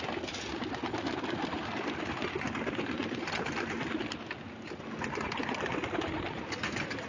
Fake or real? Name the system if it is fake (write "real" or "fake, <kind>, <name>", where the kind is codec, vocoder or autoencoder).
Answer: real